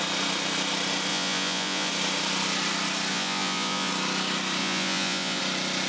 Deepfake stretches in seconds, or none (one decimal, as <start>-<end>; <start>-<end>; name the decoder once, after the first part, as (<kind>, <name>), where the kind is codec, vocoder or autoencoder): 1.1-1.9 (vocoder, Vocos); 3.1-3.9; 4.6-5.4